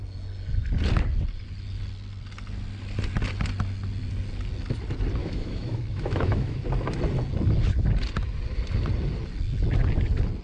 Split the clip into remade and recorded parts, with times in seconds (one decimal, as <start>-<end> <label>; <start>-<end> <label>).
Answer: 0.0-5.2 recorded; 5.2-6.6 remade; 6.6-10.4 recorded